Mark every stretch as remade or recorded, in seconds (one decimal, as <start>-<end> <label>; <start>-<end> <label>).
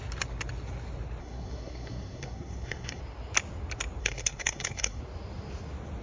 0.0-1.2 recorded; 1.2-3.0 remade; 3.0-4.0 recorded; 4.0-5.0 remade; 5.0-6.0 recorded